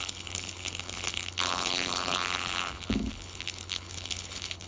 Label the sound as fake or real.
fake